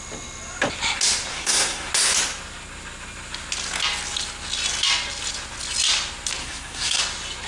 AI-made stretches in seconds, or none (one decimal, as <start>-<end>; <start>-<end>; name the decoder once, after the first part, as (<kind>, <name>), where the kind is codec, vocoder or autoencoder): 1.3-1.9 (codec, SNAC); 6.4-7.0